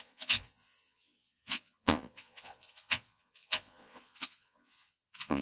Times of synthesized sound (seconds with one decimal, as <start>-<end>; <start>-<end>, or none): 0.0-5.4